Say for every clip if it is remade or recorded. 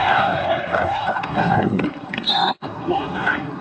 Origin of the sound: remade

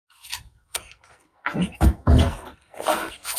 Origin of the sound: remade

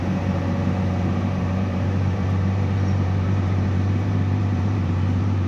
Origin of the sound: remade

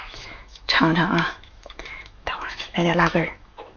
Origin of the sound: remade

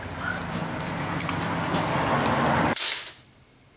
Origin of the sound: recorded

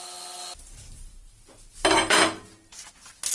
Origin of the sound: recorded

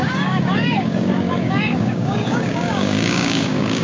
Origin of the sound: remade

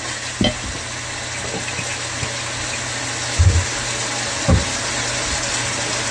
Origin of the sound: recorded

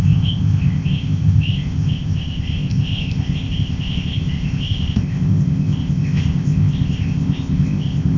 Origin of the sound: remade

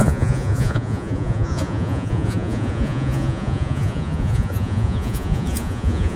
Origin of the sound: remade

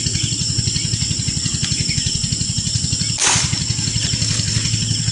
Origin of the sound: recorded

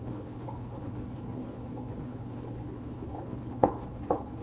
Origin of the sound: remade